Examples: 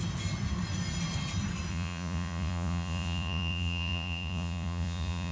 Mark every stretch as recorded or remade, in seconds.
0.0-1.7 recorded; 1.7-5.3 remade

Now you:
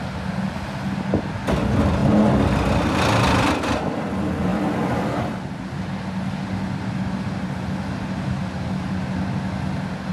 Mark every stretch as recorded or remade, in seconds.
0.0-10.1 recorded

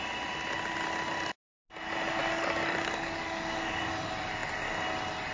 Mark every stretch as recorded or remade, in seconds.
0.0-2.2 recorded; 2.2-3.8 remade; 3.8-5.3 recorded